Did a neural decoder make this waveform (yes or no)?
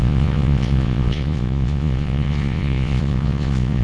yes